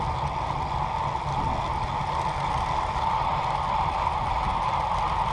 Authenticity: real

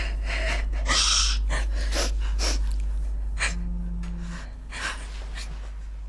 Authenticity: real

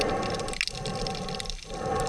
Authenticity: real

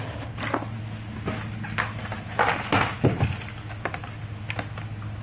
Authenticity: real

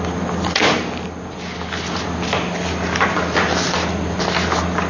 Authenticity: real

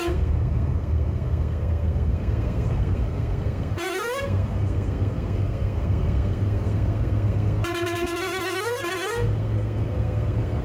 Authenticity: fake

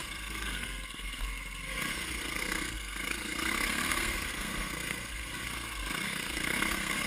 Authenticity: fake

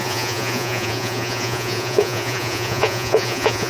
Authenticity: fake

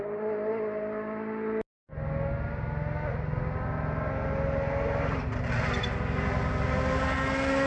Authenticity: real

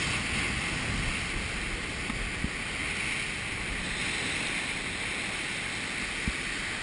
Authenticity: real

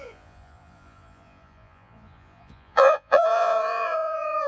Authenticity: fake